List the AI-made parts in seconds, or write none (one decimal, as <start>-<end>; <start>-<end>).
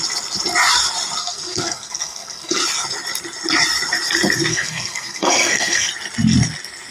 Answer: 1.2-2.6; 4.5-5.9